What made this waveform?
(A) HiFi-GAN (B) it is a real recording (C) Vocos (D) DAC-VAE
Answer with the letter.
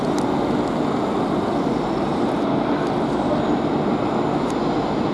B